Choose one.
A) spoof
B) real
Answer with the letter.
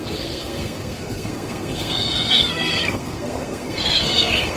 A